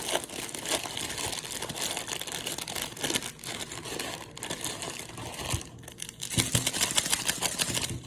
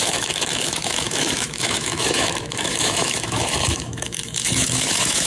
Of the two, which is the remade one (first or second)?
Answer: second